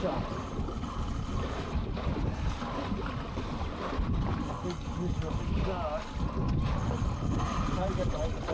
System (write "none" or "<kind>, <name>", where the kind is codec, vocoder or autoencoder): none